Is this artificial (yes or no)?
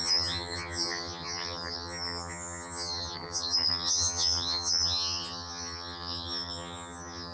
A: yes